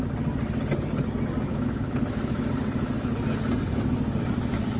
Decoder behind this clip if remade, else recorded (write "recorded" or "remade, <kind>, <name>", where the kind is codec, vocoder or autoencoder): recorded